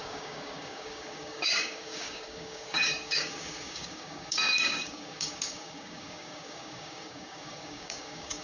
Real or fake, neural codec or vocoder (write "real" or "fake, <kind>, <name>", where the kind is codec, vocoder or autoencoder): fake, codec, DAC